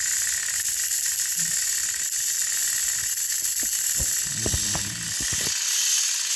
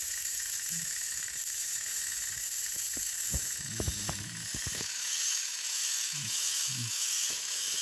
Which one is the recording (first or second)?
first